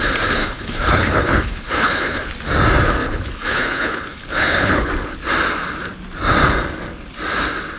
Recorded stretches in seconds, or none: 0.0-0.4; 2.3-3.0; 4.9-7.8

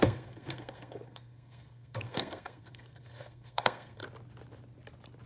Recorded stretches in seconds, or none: 4.0-5.3